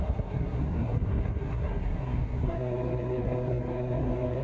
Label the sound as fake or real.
fake